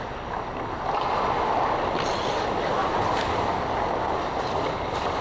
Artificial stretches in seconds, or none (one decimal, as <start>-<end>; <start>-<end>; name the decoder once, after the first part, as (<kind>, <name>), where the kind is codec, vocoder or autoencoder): none